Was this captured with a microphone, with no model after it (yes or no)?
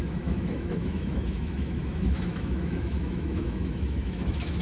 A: no